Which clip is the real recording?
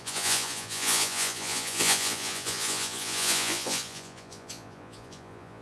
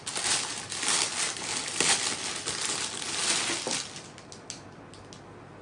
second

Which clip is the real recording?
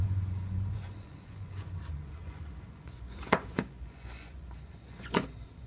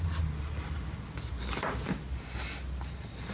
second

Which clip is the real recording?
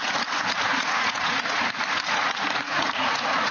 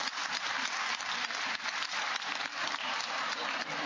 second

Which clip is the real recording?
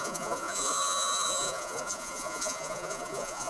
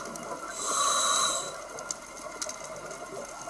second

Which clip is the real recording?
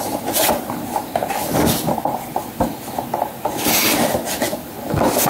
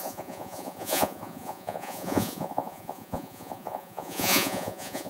first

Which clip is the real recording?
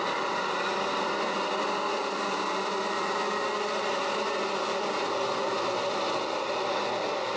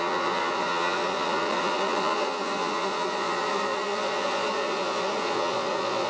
first